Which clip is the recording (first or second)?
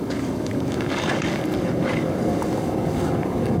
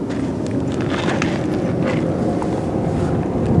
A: second